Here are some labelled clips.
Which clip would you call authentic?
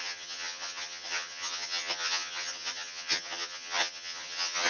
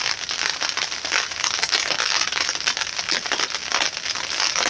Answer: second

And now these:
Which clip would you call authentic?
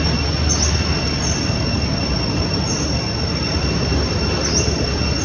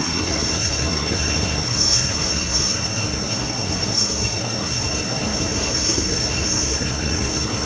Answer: first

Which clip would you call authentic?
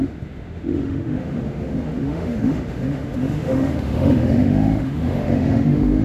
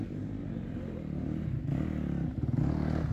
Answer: second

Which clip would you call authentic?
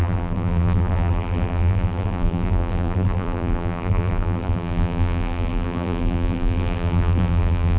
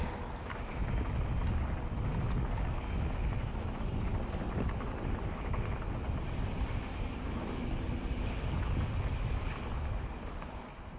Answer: second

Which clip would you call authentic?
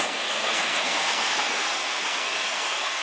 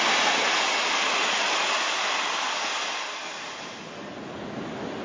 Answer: second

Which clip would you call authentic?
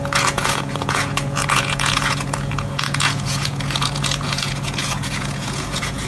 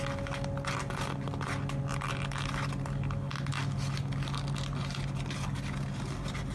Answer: second